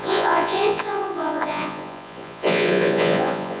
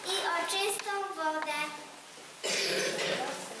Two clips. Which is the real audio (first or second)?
second